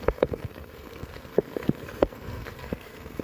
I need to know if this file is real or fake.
fake